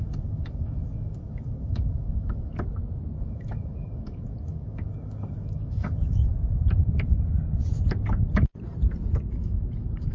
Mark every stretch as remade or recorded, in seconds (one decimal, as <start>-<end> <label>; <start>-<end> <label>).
0.0-2.5 remade; 2.5-3.2 recorded; 3.2-6.3 remade; 6.3-9.3 recorded; 9.3-10.1 remade